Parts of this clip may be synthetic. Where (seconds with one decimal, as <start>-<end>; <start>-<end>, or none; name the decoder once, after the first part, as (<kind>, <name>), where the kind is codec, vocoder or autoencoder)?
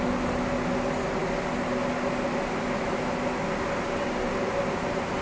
none